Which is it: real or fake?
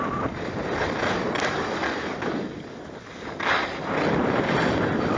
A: real